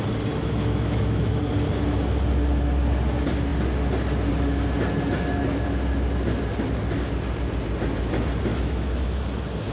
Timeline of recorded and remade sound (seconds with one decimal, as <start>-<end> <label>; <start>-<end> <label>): 0.0-0.4 recorded; 0.4-1.4 remade; 1.4-8.5 recorded; 8.5-9.2 remade; 9.2-9.7 recorded